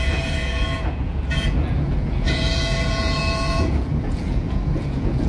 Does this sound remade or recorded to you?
remade